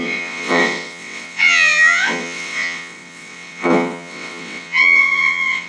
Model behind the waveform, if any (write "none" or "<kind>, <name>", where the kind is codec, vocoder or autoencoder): vocoder, WaveNeXt